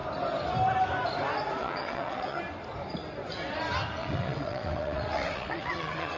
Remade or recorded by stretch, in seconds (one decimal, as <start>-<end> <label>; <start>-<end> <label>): 0.0-1.6 recorded; 1.6-2.4 remade; 2.4-4.0 recorded; 4.0-6.2 remade